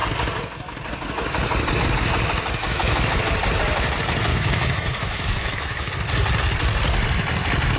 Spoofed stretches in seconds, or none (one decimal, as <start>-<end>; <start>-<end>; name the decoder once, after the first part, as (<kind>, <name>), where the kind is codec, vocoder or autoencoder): 2.6-3.2 (autoencoder, DAC-VAE); 4.3-5.9